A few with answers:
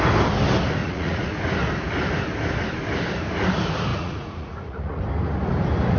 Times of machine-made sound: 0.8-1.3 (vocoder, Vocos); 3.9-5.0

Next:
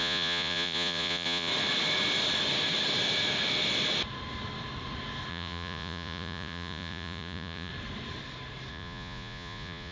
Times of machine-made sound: 0.0-1.5 (vocoder, Vocos); 5.3-7.7; 8.7-9.9

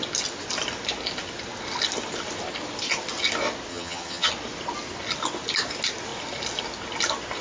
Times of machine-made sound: 3.7-4.3 (vocoder, HiFi-GAN)